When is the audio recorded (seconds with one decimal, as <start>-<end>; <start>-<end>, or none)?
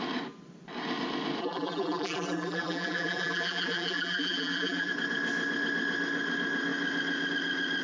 0.0-1.4; 4.9-7.8